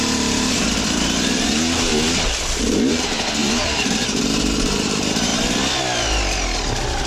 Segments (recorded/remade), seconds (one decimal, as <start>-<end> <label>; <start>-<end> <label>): 0.0-1.9 remade; 1.9-2.9 recorded; 2.9-5.3 remade; 5.3-7.1 recorded